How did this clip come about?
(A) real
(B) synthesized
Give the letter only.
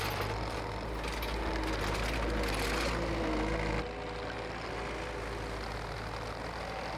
A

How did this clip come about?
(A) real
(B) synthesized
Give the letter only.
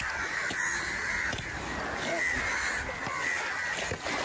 A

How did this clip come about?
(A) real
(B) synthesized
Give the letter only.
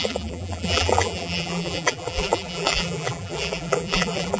B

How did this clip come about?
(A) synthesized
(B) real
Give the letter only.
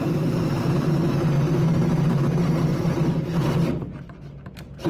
A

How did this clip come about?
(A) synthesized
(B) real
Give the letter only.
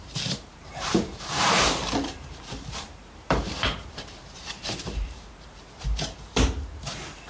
A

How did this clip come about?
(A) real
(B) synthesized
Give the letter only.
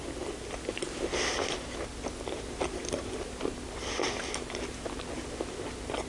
B